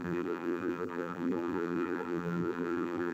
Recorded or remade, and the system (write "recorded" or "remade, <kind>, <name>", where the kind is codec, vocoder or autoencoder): remade, vocoder, BigVGAN v2